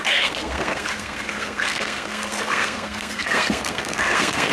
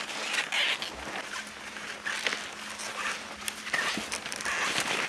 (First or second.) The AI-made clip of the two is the first